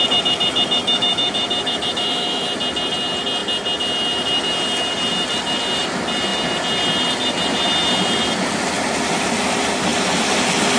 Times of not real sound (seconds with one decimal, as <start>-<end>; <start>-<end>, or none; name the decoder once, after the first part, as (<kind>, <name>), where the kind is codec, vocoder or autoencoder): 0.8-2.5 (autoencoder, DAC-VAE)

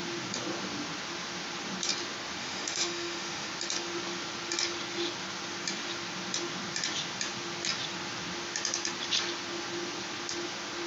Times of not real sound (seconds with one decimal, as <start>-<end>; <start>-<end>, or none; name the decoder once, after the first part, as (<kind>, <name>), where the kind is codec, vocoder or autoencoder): 2.4-3.5 (autoencoder, DAC-VAE)

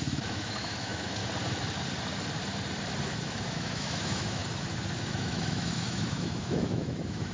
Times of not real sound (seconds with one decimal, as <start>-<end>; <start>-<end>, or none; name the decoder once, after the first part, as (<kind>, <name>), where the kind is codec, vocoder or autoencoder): 0.0-1.2 (autoencoder, DAC-VAE); 3.2-4.4; 5.0-7.3

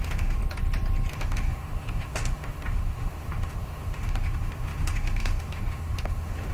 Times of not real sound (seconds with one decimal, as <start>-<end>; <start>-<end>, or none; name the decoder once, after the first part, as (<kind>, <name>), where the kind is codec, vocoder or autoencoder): 0.0-0.4 (autoencoder, DAC-VAE); 1.1-6.5

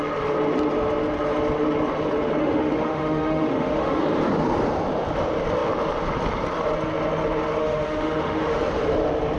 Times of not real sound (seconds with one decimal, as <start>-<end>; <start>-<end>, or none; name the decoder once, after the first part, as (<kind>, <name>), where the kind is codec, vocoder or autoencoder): 2.4-4.0 (autoencoder, DAC-VAE); 7.6-8.6

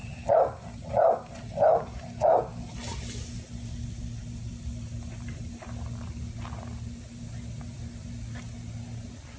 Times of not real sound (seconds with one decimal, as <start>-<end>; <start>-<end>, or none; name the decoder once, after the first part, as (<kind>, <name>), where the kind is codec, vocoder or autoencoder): none